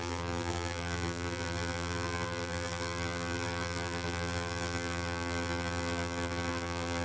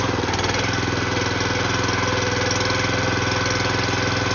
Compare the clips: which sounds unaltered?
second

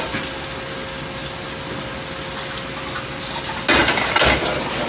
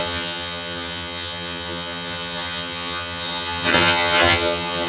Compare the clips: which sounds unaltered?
first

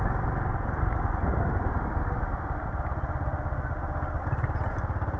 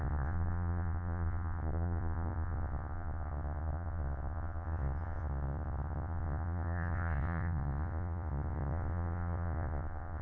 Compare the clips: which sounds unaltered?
first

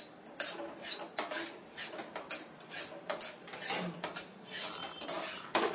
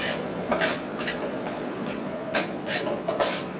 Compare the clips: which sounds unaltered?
first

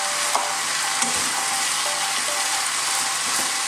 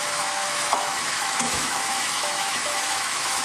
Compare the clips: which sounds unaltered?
first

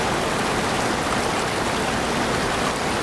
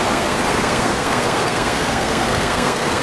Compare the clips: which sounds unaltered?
first